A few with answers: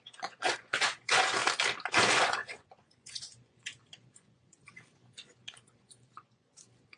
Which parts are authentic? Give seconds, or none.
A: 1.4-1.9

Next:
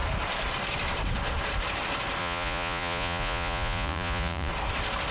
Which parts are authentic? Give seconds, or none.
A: 0.0-2.2; 4.5-5.1

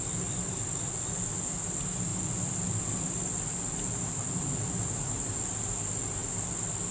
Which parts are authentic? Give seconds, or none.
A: 0.0-6.9

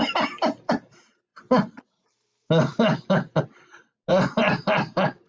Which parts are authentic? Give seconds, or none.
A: 0.0-5.3

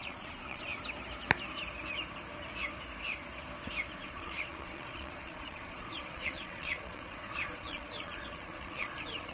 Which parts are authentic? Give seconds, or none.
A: 0.7-4.0

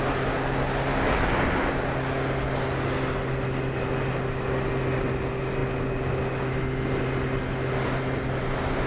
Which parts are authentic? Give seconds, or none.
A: 0.0-8.9

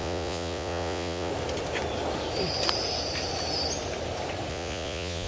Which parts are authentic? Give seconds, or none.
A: 1.3-4.5